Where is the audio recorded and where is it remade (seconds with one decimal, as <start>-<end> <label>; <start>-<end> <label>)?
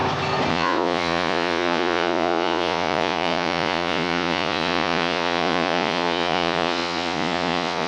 0.0-0.5 recorded; 0.5-7.9 remade